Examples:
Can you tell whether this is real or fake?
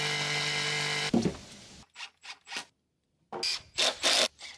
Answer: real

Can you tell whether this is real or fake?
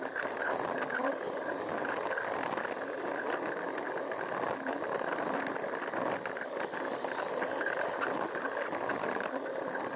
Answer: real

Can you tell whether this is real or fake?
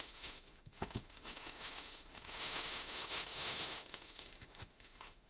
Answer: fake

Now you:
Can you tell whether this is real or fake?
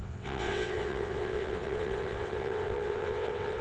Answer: fake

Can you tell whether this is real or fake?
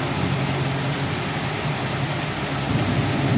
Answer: real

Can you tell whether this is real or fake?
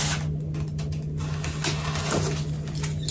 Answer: real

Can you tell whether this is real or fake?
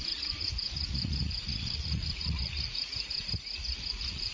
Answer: fake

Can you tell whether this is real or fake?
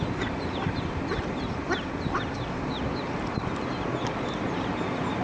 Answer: real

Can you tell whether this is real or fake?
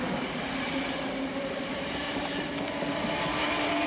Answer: real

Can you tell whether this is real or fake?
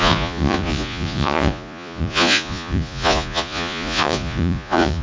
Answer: fake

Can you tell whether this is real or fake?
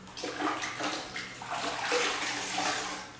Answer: real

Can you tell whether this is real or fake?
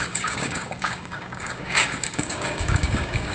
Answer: fake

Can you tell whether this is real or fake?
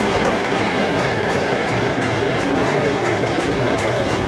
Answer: fake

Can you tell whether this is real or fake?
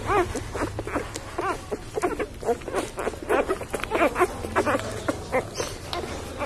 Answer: real